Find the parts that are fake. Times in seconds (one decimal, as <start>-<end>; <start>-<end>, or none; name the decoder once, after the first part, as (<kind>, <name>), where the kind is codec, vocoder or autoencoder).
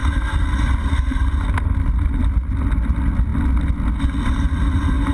none